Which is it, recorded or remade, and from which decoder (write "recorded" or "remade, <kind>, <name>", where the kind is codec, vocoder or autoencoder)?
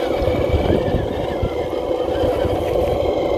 recorded